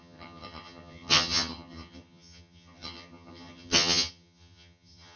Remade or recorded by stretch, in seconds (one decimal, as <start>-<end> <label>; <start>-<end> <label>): 0.0-5.2 remade

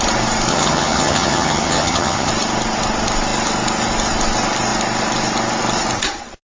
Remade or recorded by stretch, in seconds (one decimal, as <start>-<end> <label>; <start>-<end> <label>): 0.0-0.5 recorded; 0.5-2.3 remade; 2.3-6.4 recorded

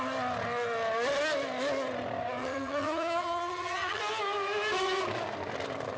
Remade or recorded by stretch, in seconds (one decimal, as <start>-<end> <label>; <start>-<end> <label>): 0.0-2.4 recorded; 2.4-4.0 remade; 4.0-6.0 recorded